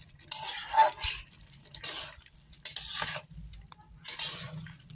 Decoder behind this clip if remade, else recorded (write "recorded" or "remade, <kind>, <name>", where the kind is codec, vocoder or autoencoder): recorded